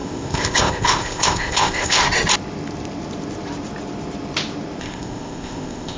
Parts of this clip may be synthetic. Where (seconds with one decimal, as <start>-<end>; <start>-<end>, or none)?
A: 0.0-2.0; 4.8-6.0